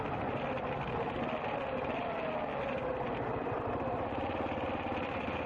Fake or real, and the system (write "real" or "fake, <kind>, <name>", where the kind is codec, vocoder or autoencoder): real